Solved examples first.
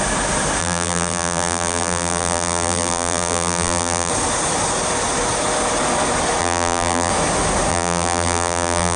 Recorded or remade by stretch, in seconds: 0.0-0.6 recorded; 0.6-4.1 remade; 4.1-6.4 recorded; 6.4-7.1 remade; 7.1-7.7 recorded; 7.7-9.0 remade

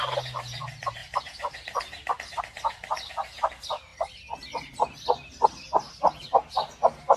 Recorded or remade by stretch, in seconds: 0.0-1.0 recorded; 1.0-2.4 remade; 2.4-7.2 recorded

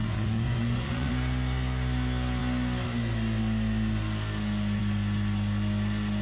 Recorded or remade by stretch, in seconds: 0.0-1.1 remade; 1.1-6.2 recorded

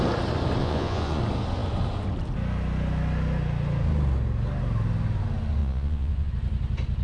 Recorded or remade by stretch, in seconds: 0.0-0.6 recorded; 0.6-1.2 remade; 1.2-5.6 recorded; 5.6-6.3 remade; 6.3-7.0 recorded